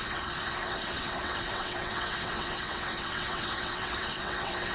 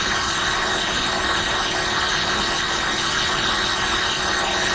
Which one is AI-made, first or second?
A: first